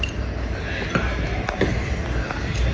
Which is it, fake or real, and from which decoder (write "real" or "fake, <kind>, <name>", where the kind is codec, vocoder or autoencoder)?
real